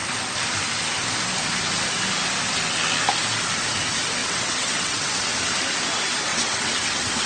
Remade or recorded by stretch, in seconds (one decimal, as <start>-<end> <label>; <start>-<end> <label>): 0.0-4.2 recorded; 4.2-5.2 remade; 5.2-6.3 recorded; 6.3-7.3 remade